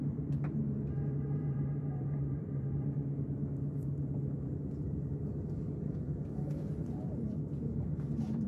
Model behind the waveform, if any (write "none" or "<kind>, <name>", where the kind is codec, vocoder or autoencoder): vocoder, BigVGAN v2